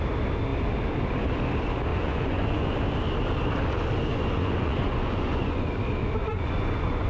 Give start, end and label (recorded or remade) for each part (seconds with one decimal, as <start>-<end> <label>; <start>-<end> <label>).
0.0-1.9 recorded; 1.9-2.7 remade; 2.7-4.1 recorded; 4.1-5.7 remade; 5.7-6.2 recorded; 6.2-7.1 remade